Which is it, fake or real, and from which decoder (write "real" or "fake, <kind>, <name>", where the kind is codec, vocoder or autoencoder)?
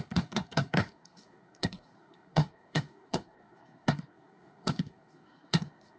fake, codec, SNAC